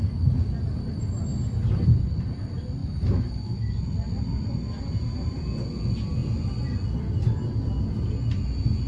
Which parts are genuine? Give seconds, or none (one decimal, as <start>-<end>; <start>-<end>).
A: 0.0-2.8; 3.8-8.9